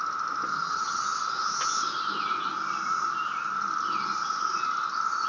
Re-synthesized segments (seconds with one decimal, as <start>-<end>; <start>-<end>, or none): 0.5-1.0